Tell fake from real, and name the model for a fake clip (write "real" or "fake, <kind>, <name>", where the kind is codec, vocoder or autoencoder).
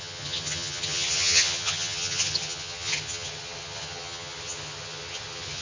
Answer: fake, vocoder, HiFi-GAN